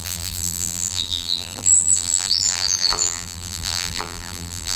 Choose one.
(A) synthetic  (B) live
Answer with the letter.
A